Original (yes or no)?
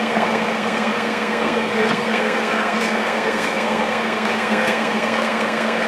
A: no